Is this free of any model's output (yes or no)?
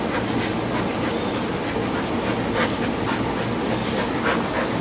yes